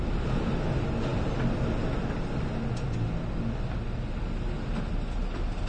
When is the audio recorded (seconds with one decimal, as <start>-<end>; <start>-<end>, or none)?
0.0-5.7